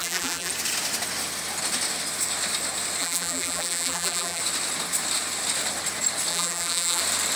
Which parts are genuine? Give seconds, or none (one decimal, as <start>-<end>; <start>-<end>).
0.5-3.0; 4.4-6.3; 7.0-7.4